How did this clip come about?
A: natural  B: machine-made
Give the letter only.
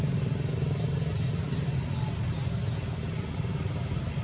A